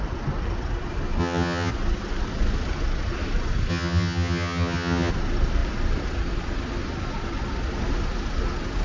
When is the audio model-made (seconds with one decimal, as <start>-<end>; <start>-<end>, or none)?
1.2-1.7; 3.7-5.1